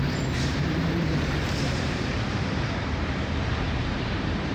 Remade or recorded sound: remade